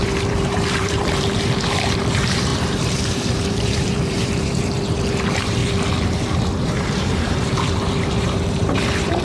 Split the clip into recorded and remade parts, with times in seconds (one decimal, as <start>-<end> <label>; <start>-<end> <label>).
0.0-5.6 remade; 5.6-6.7 recorded; 6.7-9.2 remade